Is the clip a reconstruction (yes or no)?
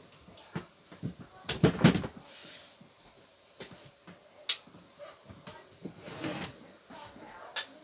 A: no